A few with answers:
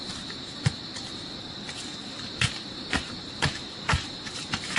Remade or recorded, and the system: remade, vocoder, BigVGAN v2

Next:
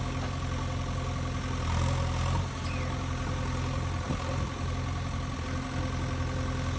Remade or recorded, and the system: recorded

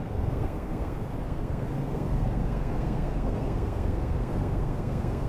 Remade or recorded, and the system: remade, codec, SNAC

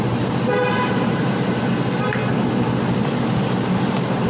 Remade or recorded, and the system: remade, vocoder, BigVGAN v2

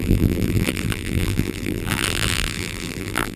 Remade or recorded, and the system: remade, vocoder, BigVGAN v2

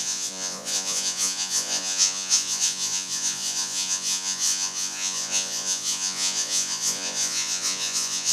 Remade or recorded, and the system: remade, vocoder, Vocos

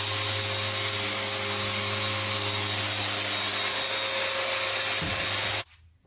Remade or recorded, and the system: recorded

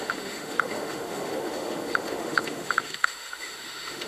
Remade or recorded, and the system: remade, autoencoder, DAC-VAE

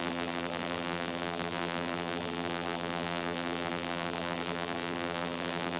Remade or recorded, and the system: remade, vocoder, BigVGAN v2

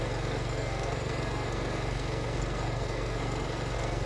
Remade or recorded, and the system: remade, codec, SNAC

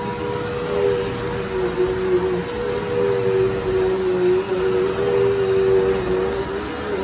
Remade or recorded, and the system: recorded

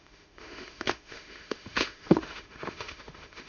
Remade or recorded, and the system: remade, autoencoder, DAC-VAE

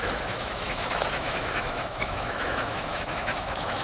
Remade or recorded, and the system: remade, autoencoder, DAC-VAE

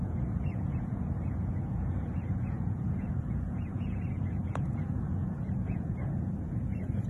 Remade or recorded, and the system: remade, vocoder, Vocos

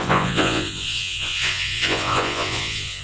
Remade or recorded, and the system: remade, vocoder, Vocos